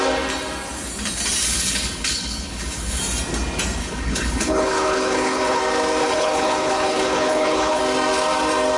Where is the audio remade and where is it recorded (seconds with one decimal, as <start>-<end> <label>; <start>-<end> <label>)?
0.0-1.4 recorded; 1.4-3.0 remade; 3.0-3.8 recorded; 3.8-5.6 remade; 5.6-6.0 recorded; 6.0-7.8 remade; 7.8-8.8 recorded